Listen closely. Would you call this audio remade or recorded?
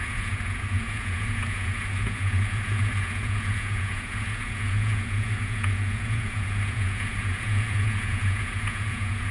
remade